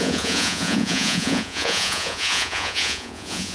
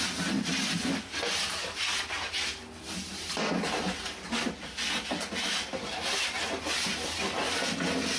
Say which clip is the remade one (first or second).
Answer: first